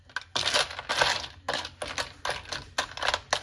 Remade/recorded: recorded